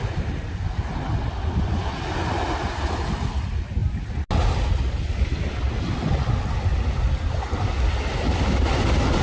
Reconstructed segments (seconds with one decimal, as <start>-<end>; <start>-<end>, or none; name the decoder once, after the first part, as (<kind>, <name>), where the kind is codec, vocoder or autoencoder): none